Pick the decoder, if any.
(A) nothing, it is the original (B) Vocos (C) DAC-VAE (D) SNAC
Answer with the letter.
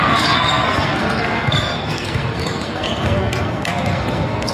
D